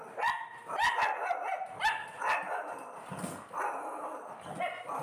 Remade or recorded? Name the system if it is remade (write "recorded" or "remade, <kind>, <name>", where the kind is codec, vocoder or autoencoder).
recorded